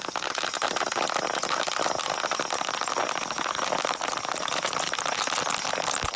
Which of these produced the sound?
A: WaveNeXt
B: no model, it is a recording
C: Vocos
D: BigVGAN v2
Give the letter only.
B